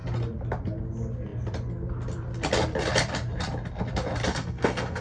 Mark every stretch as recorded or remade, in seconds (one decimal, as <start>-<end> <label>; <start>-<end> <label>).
0.0-4.3 recorded; 4.3-5.0 remade